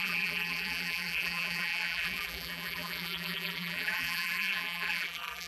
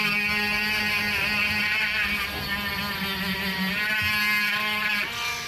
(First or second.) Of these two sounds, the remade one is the first